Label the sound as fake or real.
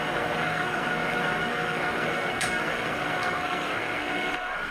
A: fake